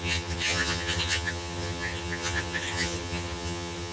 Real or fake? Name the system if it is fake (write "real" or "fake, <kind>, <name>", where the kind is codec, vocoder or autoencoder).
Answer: fake, vocoder, HiFi-GAN